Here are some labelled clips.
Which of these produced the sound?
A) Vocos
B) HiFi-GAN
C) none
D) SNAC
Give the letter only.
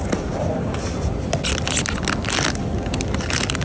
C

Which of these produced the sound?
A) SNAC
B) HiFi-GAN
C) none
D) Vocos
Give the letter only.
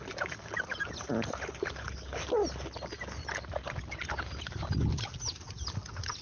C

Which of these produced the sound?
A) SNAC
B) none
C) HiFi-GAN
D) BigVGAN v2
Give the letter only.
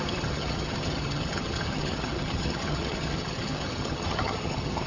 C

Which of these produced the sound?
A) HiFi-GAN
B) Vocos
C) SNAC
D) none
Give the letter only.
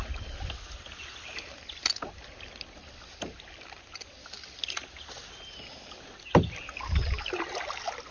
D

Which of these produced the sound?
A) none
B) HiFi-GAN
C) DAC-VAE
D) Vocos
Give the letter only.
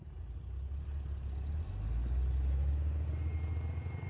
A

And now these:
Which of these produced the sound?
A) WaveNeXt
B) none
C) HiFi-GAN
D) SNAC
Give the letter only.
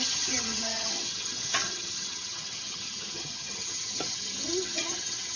C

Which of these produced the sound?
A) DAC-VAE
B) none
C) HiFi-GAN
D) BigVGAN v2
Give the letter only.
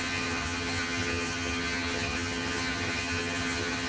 C